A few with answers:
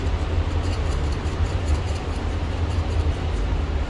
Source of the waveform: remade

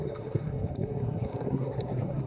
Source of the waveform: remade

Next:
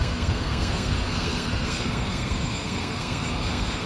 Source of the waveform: remade